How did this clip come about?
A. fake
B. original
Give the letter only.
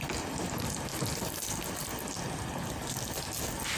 B